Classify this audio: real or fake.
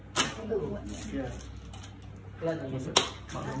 real